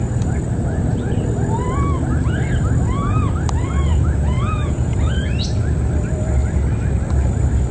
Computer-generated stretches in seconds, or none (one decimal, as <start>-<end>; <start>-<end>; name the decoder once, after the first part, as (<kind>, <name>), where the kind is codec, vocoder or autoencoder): 3.9-5.3 (vocoder, Vocos)